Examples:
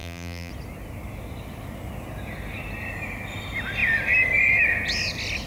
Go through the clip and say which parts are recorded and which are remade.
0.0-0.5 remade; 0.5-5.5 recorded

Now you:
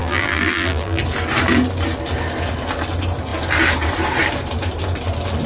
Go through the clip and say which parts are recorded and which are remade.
0.0-1.0 remade; 1.0-5.5 recorded

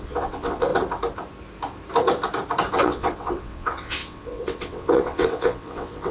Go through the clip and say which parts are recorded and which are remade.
0.0-0.7 remade; 0.7-2.7 recorded; 2.7-6.1 remade

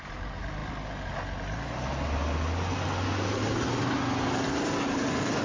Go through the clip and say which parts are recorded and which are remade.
0.0-5.4 recorded

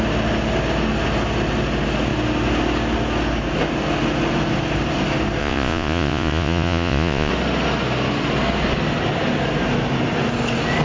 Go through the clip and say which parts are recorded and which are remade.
0.0-5.4 recorded; 5.4-7.3 remade; 7.3-10.8 recorded